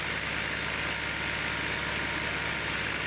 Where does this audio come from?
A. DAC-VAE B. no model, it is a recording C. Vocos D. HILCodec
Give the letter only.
B